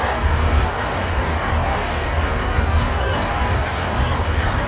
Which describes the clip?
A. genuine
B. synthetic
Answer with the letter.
B